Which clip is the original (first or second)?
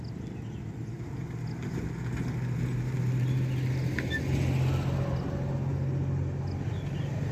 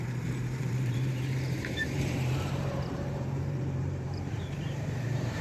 first